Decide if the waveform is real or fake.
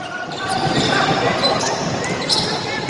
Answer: fake